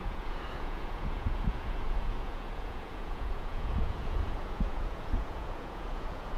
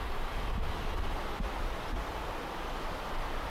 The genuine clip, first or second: second